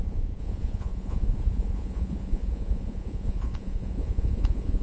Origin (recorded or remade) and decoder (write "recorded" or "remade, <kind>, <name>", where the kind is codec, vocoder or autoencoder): remade, vocoder, Vocos